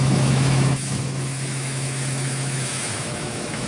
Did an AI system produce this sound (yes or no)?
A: yes